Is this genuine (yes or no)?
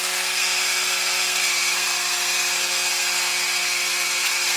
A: no